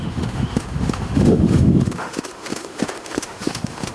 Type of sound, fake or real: fake